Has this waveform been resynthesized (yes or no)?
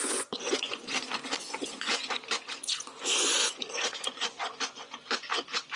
yes